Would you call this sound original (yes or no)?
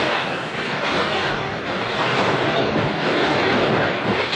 no